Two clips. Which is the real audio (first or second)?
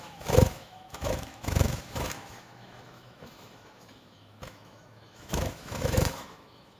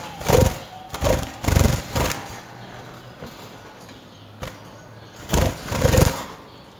second